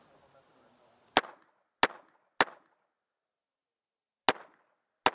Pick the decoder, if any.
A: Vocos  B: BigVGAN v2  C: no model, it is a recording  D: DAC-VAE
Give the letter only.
C